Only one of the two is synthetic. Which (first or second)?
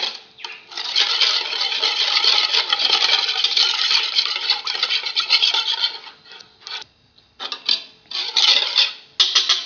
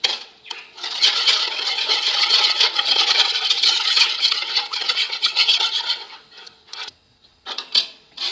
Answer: second